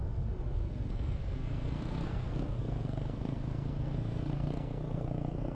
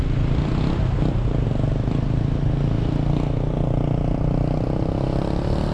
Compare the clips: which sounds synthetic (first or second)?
first